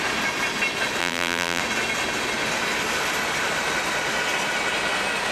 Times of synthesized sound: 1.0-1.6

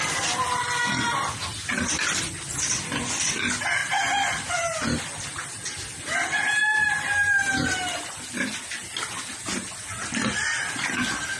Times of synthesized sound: 0.0-3.1; 3.8-4.5